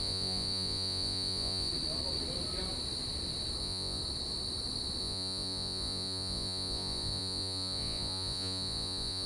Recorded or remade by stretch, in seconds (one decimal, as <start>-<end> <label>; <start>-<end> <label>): 0.0-1.7 remade; 1.7-3.6 recorded; 3.6-4.0 remade; 4.0-5.0 recorded; 5.0-9.3 remade